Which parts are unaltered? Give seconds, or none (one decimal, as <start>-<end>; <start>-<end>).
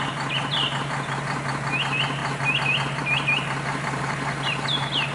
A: 0.0-5.1